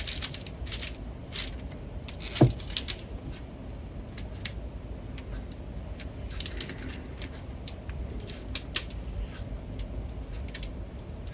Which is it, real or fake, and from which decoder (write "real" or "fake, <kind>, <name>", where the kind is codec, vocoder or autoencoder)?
real